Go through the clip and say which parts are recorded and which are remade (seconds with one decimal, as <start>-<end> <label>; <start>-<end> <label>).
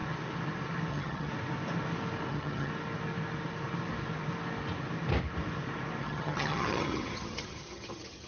0.0-0.9 recorded; 0.9-1.3 remade; 1.3-2.3 recorded; 2.3-2.7 remade; 2.7-6.0 recorded; 6.0-8.3 remade